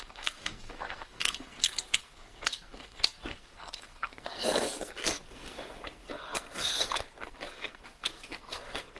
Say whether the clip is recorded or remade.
remade